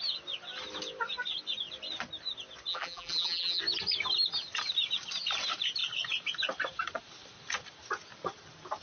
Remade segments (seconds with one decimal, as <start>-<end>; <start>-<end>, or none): 2.7-3.6